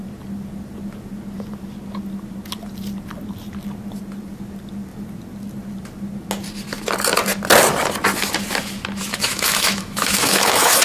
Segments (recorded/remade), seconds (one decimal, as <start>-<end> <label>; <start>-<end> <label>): 0.0-9.1 recorded; 9.1-10.8 remade